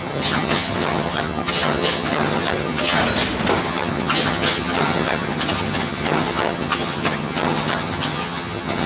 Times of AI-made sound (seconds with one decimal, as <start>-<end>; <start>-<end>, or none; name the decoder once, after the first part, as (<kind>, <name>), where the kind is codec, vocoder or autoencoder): 0.0-3.0 (vocoder, HiFi-GAN); 3.6-8.9